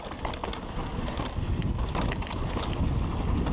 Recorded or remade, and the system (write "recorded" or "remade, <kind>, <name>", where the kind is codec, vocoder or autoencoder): recorded